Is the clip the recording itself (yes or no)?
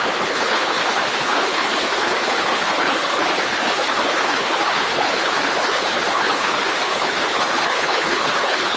no